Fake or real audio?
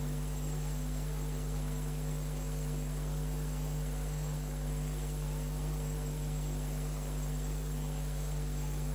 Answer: fake